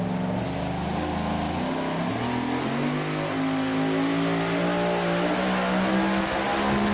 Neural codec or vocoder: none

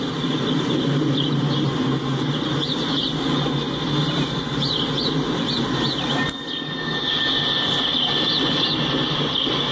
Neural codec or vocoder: none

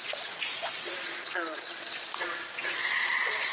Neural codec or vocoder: vocoder, Vocos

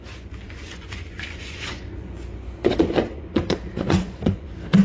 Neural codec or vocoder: vocoder, Vocos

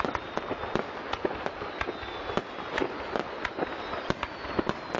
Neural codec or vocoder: none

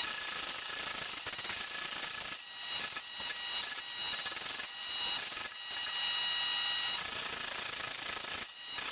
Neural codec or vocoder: none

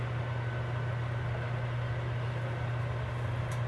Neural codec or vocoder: none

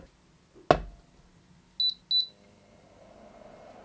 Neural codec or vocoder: none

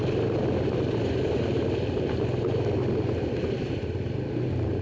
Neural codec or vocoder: none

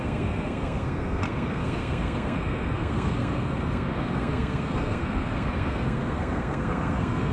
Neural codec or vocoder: codec, SNAC